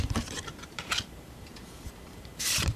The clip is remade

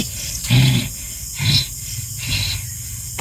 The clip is recorded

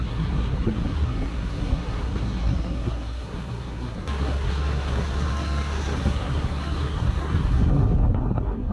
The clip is remade